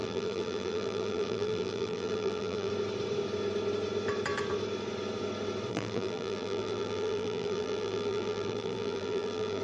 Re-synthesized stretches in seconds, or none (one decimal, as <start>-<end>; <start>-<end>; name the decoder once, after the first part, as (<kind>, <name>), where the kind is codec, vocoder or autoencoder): 0.0-2.7 (vocoder, BigVGAN v2); 5.7-9.6